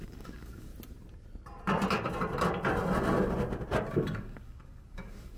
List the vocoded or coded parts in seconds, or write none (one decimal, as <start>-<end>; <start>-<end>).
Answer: 0.0-0.7; 3.9-5.4